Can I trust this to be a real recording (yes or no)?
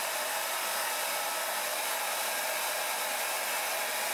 yes